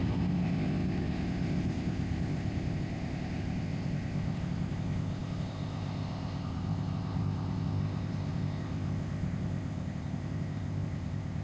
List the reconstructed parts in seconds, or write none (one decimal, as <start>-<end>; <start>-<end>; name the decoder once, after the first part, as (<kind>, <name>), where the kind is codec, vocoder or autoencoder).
0.0-11.4 (codec, ZipCodec)